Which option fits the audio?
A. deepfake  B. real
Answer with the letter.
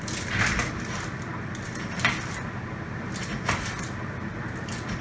B